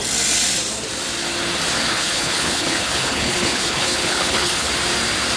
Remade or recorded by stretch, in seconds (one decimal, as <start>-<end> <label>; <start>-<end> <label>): 0.0-1.9 recorded; 1.9-4.7 remade; 4.7-5.4 recorded